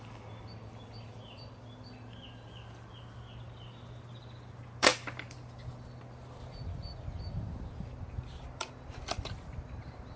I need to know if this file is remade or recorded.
remade